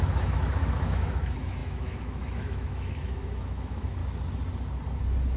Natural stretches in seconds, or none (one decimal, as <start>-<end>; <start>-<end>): 4.0-5.4